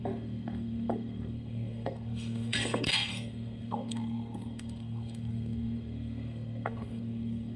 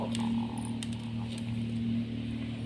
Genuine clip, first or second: second